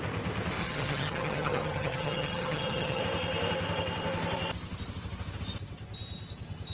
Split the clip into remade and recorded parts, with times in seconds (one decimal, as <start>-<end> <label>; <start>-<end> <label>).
0.0-0.6 recorded; 0.6-3.0 remade; 3.0-6.7 recorded